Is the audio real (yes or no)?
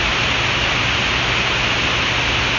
yes